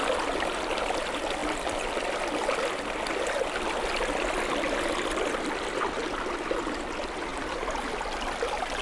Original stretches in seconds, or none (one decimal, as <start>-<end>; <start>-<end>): 0.0-8.8